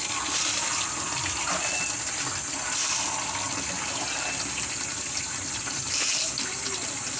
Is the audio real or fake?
real